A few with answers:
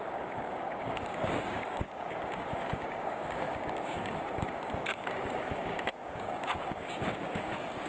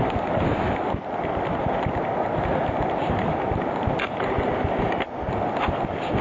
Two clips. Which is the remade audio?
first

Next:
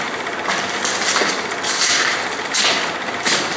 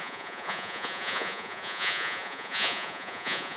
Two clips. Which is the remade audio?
second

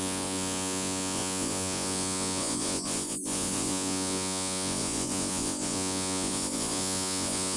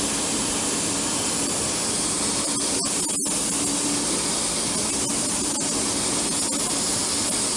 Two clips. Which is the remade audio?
first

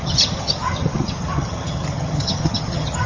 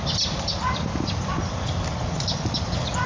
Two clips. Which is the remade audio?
first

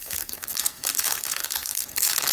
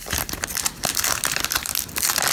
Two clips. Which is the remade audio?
first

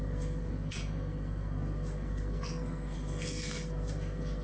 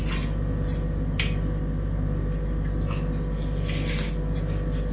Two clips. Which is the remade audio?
first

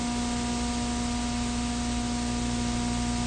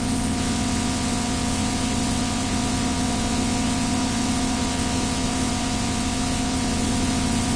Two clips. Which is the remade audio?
second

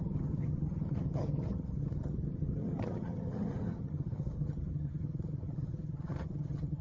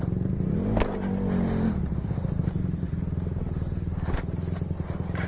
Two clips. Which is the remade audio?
first